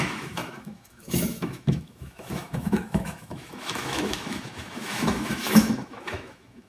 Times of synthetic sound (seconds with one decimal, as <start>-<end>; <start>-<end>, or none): 0.0-6.7